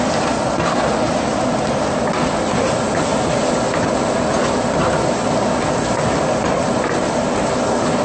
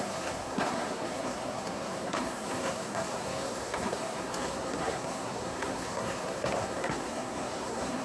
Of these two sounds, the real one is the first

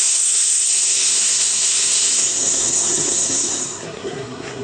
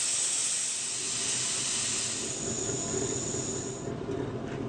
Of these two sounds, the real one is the second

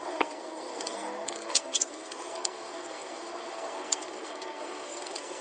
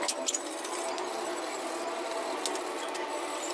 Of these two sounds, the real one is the second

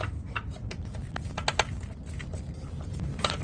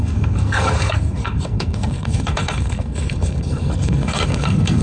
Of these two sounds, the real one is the first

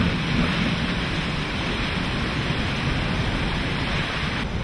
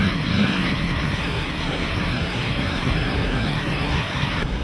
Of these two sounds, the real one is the first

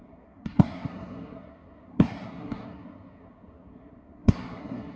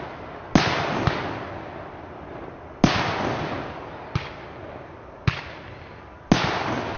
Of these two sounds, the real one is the second